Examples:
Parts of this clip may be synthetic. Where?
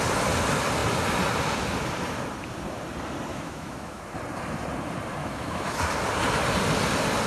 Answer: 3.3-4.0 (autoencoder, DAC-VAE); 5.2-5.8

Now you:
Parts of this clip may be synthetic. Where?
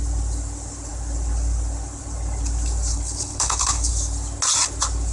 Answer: 2.9-3.9 (codec, HILCodec)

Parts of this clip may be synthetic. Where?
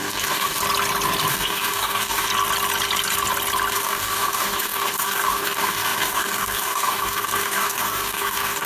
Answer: 0.0-0.6 (codec, DAC); 1.3-2.3; 3.7-8.7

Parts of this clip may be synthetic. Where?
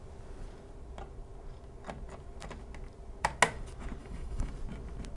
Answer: 4.0-4.5 (autoencoder, DAC-VAE)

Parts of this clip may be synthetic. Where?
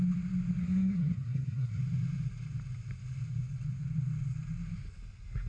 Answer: 0.6-1.8 (codec, SNAC)